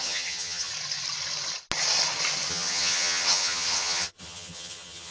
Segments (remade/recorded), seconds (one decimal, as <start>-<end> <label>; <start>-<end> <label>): 0.0-0.7 remade; 0.7-2.5 recorded; 2.5-5.1 remade